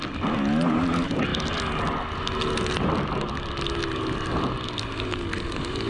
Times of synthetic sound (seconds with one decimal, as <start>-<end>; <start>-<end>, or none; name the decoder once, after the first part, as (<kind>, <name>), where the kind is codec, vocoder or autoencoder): none